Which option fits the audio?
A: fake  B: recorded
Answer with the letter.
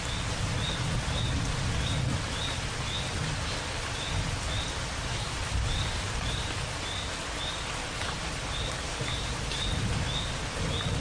B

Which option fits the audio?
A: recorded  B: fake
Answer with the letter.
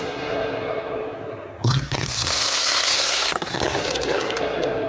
B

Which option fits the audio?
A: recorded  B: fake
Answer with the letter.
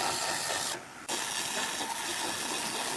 A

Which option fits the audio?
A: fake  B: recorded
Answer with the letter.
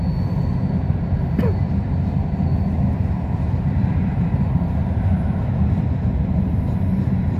B